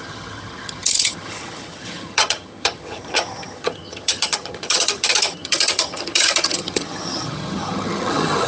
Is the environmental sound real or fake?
fake